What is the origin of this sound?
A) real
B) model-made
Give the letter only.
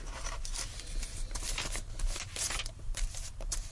B